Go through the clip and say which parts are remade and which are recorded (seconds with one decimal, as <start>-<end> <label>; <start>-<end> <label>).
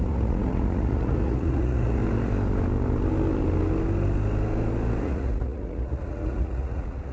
0.0-2.0 remade; 2.0-5.0 recorded; 5.0-7.1 remade